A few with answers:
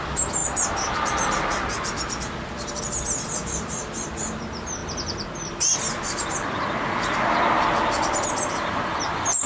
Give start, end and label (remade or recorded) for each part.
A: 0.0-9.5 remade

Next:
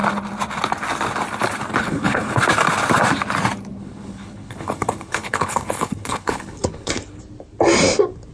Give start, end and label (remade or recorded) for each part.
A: 0.0-1.8 recorded; 1.8-2.4 remade; 2.4-3.8 recorded; 3.8-7.2 remade; 7.2-8.3 recorded

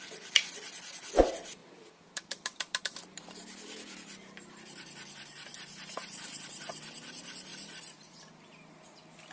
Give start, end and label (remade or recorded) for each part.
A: 0.0-7.5 recorded; 7.5-8.2 remade; 8.2-9.3 recorded

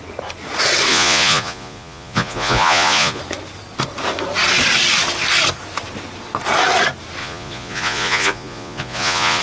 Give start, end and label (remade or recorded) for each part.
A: 0.0-0.9 recorded; 0.9-3.2 remade; 3.2-7.2 recorded; 7.2-9.4 remade

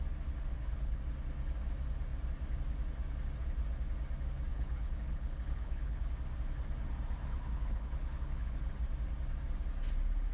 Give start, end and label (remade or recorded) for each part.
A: 0.0-0.5 recorded; 0.5-1.0 remade; 1.0-4.5 recorded; 4.5-6.1 remade; 6.1-7.2 recorded; 7.2-8.7 remade; 8.7-10.3 recorded

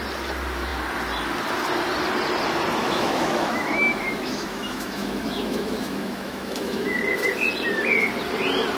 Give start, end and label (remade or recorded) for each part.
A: 0.0-2.8 recorded; 2.8-7.0 remade; 7.0-8.8 recorded

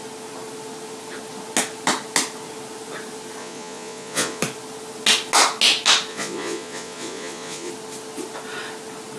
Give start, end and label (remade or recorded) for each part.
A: 0.0-3.4 recorded; 3.4-4.4 remade; 4.4-6.1 recorded; 6.1-7.7 remade; 7.7-9.2 recorded

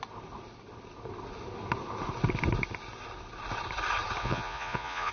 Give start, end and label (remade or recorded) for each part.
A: 0.0-4.2 recorded; 4.2-5.1 remade